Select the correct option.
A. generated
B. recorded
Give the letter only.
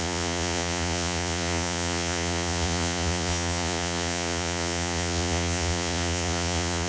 A